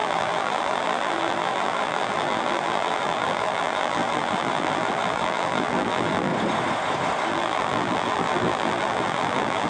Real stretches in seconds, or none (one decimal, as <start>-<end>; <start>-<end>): 6.3-7.3